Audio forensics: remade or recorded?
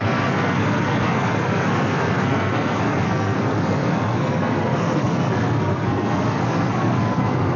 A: remade